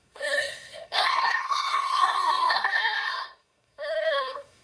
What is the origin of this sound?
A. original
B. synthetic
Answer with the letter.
B